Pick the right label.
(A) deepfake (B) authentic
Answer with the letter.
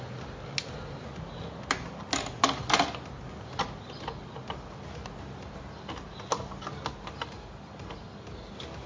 B